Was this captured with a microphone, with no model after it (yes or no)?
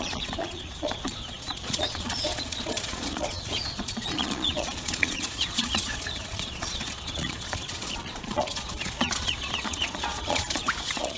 no